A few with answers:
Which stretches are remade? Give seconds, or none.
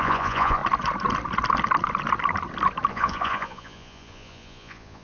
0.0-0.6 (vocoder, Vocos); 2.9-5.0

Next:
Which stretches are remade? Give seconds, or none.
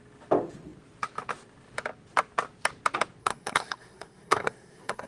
3.2-5.1 (codec, SNAC)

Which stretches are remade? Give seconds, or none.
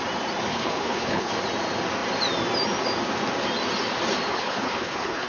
0.5-1.3 (codec, HILCodec); 4.3-5.3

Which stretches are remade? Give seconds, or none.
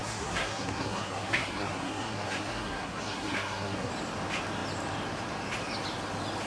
0.0-3.9 (codec, SNAC)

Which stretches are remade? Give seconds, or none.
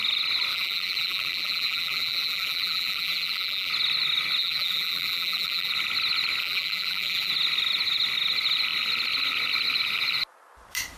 0.5-3.7 (vocoder, BigVGAN v2); 4.4-5.7; 6.4-7.3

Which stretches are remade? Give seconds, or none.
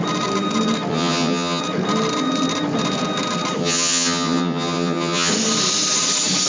0.9-1.6 (vocoder, HiFi-GAN); 3.6-5.3